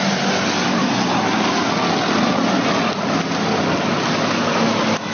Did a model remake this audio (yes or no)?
no